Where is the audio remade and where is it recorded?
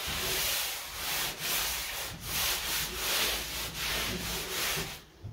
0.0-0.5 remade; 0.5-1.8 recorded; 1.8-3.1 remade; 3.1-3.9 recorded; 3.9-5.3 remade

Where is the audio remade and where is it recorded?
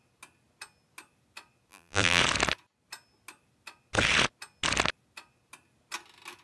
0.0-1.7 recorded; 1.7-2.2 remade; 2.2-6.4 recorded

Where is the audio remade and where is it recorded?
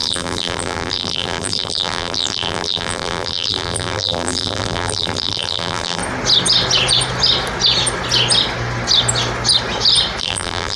0.0-6.0 remade; 6.0-10.2 recorded; 10.2-10.8 remade